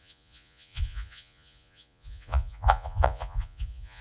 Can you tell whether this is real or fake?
fake